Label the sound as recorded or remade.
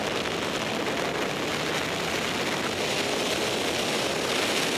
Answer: recorded